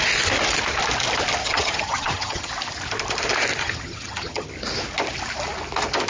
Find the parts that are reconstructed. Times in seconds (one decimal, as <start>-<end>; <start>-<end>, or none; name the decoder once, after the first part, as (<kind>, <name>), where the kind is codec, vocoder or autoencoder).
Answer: 1.4-2.5 (vocoder, HiFi-GAN); 3.6-4.5